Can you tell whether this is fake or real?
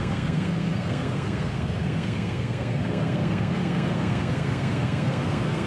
fake